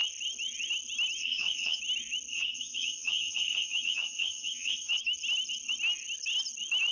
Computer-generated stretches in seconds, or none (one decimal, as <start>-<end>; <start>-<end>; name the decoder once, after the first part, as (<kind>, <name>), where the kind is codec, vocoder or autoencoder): 1.2-1.8 (vocoder, HiFi-GAN); 2.3-4.9